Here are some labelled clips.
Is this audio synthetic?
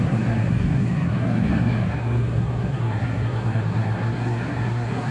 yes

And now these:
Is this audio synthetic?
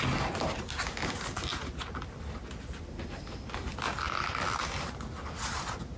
no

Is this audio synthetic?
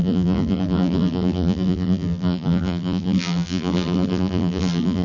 yes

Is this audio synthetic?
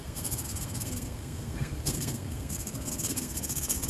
yes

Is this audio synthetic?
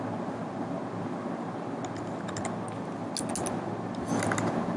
no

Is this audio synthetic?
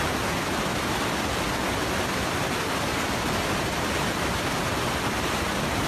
no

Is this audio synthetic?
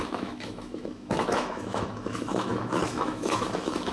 yes